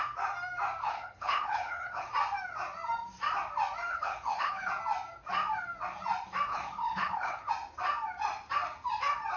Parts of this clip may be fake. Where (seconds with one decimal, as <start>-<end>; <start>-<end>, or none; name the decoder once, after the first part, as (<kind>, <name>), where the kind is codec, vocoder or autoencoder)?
0.8-2.1 (codec, HILCodec); 3.9-4.7; 6.5-7.5